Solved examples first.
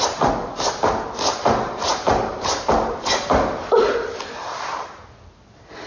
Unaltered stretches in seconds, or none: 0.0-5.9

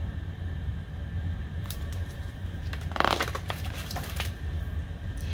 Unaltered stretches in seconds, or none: 0.7-1.4; 4.6-5.3

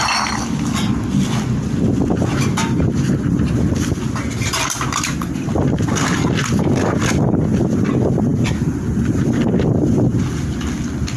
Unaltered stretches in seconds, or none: 0.0-11.2

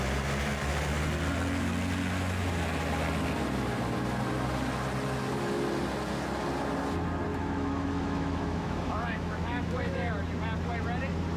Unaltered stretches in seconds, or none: 0.0-7.3; 10.1-11.4

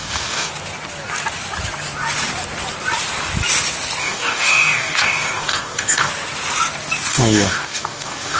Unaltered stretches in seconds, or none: 0.5-4.0; 6.1-7.1

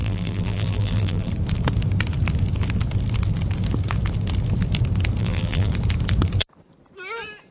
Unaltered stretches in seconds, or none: 1.3-5.2; 5.7-7.5